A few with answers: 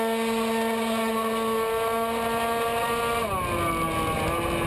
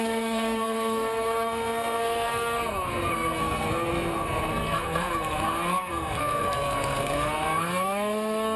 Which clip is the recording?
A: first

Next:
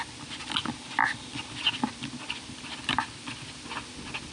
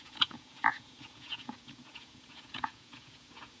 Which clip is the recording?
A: first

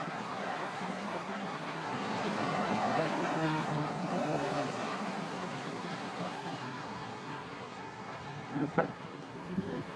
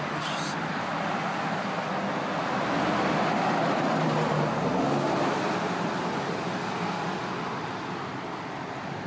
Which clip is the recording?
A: second